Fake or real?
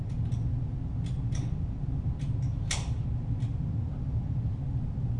real